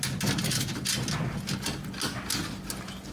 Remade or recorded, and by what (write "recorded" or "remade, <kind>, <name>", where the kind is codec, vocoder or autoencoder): recorded